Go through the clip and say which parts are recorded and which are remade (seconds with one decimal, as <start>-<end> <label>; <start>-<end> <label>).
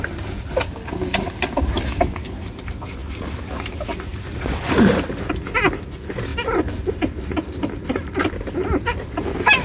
0.0-9.6 recorded